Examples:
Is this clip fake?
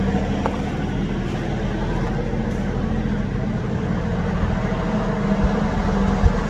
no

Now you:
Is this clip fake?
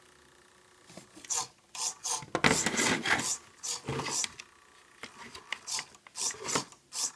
no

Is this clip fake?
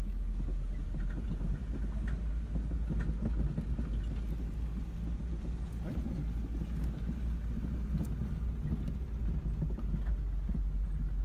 no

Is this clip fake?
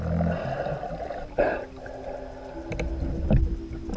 no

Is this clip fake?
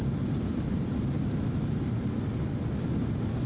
no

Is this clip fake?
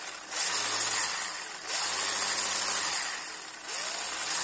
no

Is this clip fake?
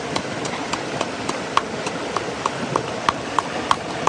no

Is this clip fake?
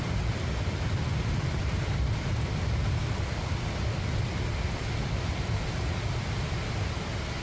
no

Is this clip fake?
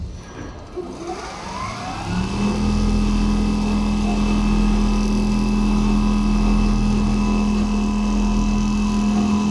no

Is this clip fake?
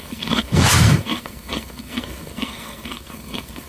yes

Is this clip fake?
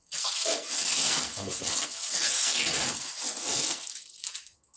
yes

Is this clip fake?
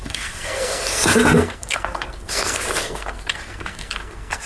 yes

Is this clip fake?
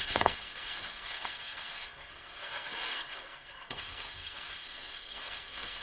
yes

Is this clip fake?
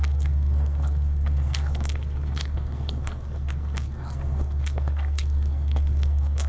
yes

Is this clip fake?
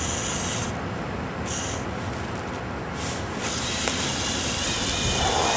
no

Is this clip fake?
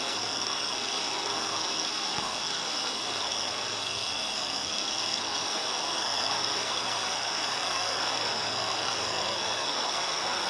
yes